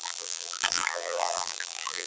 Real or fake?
fake